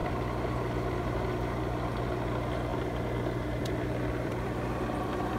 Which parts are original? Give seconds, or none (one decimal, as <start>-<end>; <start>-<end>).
1.3-2.7